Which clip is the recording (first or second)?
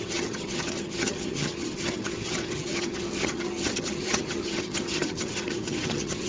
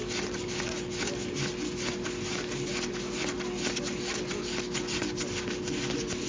second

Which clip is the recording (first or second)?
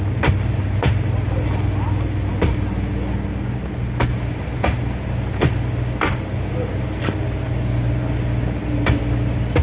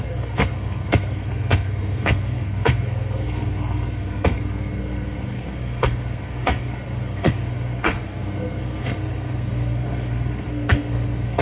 first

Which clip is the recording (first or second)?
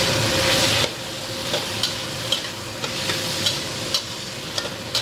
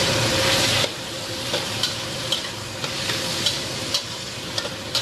first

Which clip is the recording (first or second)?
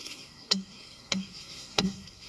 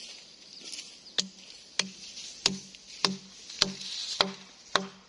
second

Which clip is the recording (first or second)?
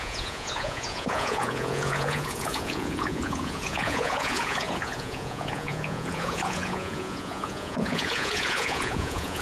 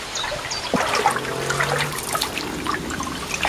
second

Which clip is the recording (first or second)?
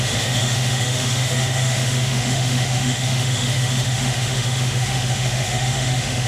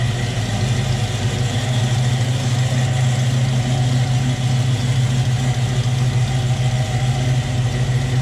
second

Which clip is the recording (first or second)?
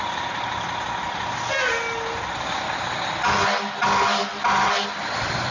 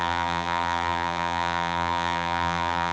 first